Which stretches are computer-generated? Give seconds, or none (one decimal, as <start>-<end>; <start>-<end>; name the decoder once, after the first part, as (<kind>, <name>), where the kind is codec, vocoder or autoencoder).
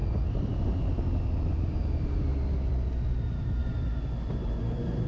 1.6-2.3 (vocoder, BigVGAN v2); 3.2-3.6; 4.3-5.1